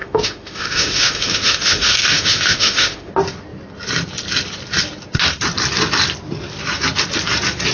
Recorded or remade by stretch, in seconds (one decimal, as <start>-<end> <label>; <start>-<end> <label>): 0.0-3.1 remade; 3.1-7.7 recorded